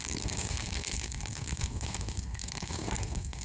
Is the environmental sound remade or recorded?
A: remade